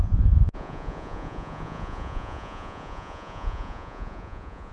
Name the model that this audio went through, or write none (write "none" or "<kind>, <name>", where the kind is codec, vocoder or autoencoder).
vocoder, Vocos